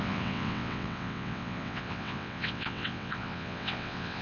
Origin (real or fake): fake